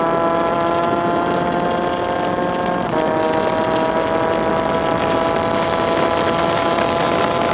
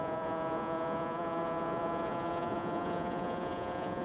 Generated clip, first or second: second